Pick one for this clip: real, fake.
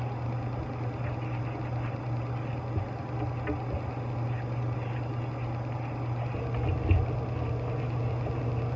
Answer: real